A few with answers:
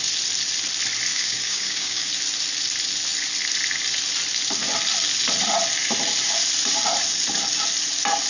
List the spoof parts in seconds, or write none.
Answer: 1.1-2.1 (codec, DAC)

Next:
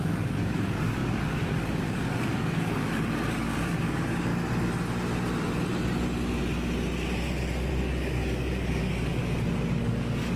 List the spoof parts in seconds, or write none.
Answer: 0.0-4.3 (codec, DAC); 7.7-9.2; 9.8-10.4

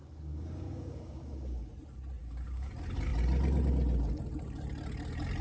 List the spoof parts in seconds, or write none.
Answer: 0.0-1.7 (codec, DAC); 2.2-2.7

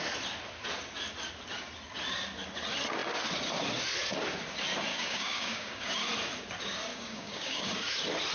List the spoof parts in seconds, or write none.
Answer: 4.9-5.9 (codec, DAC); 6.9-7.9

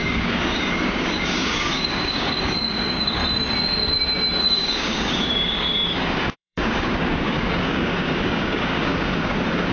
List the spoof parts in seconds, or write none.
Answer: 0.0-3.2 (codec, DAC); 4.4-9.7